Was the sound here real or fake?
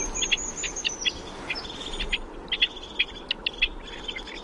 real